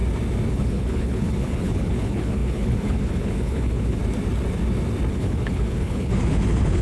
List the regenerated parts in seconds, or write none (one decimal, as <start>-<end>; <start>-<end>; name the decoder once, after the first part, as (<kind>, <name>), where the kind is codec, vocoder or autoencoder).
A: 0.5-4.0 (codec, HILCodec); 5.1-6.8